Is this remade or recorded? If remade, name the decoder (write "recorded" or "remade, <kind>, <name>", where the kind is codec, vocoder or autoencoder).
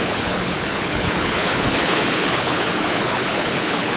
remade, codec, HILCodec